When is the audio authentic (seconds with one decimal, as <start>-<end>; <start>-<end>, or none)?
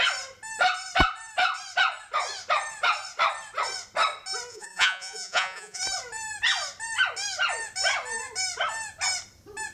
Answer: 0.0-4.5; 5.8-9.7